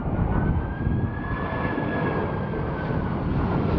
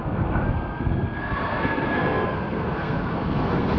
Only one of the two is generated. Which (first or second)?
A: second